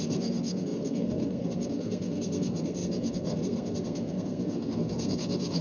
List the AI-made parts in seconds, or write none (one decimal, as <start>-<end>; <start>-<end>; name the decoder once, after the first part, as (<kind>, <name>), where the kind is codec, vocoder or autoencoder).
0.0-5.6 (codec, SNAC)